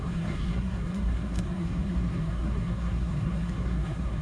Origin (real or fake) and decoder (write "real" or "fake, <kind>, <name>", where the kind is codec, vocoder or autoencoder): fake, codec, SNAC